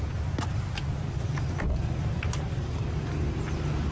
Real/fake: real